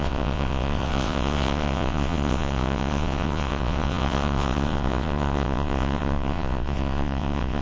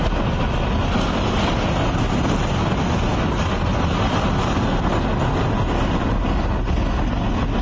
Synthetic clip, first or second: first